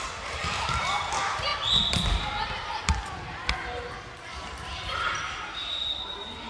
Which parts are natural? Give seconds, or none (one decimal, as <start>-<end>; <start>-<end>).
none